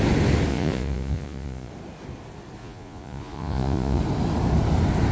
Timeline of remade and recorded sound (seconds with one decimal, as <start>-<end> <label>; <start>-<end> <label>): 0.0-0.5 recorded; 0.5-1.7 remade; 1.7-2.6 recorded; 2.6-4.0 remade; 4.0-5.1 recorded